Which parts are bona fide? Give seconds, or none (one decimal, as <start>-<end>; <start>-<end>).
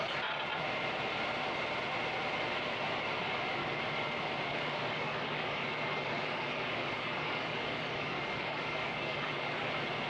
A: 0.0-4.5; 9.7-10.1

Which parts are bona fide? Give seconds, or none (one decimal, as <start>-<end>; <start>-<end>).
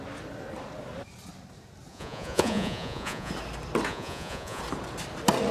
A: 0.0-1.9; 3.3-3.9; 4.6-5.5